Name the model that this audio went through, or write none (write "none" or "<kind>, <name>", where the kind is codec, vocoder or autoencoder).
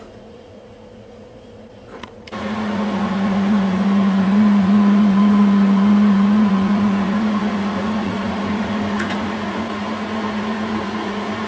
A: vocoder, Vocos